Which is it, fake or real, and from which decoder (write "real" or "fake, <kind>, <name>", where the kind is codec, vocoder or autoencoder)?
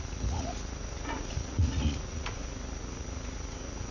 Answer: fake, vocoder, Vocos